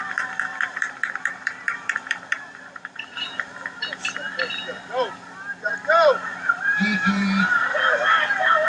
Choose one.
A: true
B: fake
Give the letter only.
B